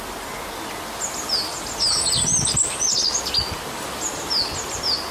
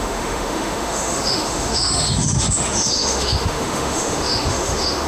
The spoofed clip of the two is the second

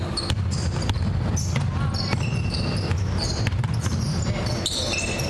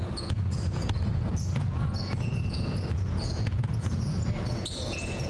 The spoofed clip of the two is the second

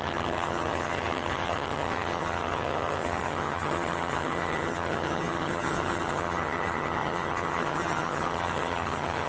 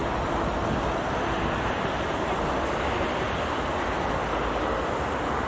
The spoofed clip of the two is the first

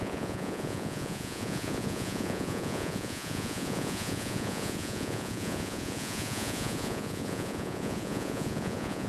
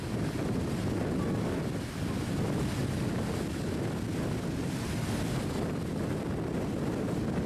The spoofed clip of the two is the first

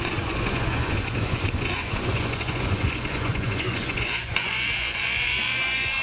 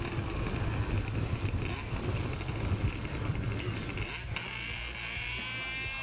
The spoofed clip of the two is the first